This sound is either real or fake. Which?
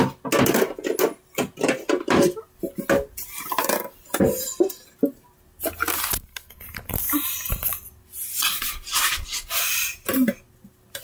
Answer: real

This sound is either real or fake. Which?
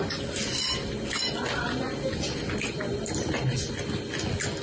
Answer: real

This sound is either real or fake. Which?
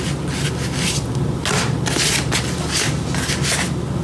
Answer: real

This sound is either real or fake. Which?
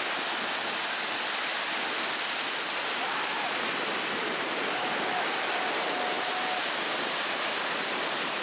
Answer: real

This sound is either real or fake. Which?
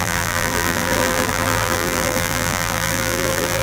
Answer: fake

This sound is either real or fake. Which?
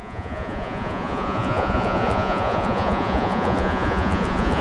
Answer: fake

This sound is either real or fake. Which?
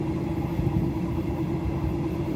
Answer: real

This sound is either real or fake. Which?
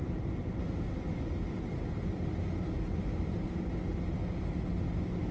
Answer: real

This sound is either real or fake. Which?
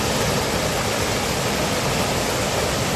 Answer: real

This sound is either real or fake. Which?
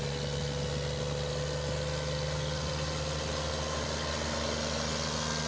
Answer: real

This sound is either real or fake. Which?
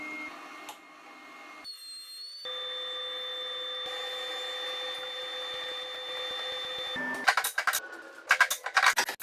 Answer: real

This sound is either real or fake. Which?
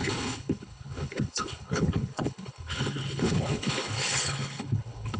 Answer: fake